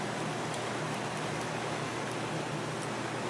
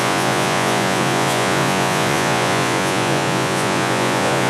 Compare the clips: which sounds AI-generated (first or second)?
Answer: second